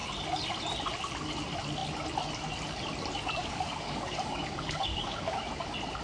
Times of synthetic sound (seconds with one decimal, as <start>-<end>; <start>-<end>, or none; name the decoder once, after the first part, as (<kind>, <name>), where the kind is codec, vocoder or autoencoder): 3.4-5.4 (codec, DAC)